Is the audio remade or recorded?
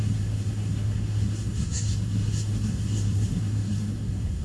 remade